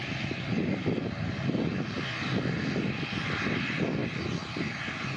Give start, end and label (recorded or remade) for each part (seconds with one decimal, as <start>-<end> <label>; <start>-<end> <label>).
0.0-5.2 recorded